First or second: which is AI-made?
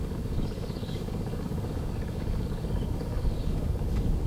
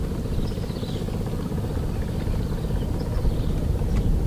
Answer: first